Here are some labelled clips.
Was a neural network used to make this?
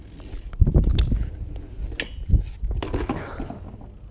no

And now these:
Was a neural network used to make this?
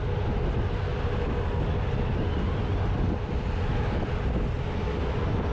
no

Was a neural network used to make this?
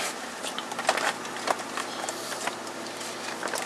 no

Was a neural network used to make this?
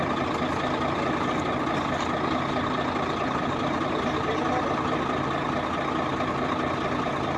no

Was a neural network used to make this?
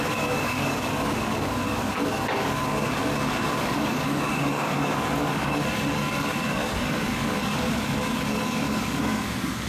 yes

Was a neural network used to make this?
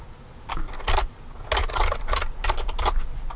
no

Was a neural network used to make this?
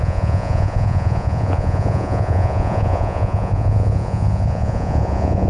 yes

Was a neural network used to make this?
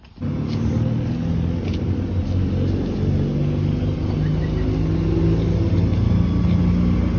no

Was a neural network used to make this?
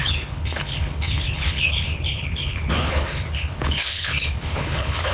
yes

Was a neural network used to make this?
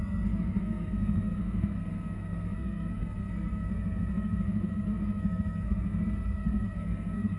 yes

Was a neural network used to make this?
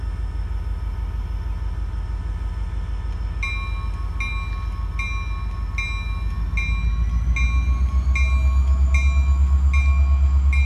no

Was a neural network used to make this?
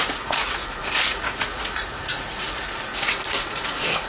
yes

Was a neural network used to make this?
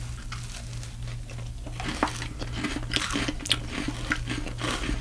no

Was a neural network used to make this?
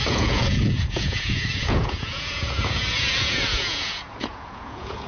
yes